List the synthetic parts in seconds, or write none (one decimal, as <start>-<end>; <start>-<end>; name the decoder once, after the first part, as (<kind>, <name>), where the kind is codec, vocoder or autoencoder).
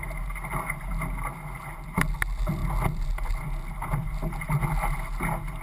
none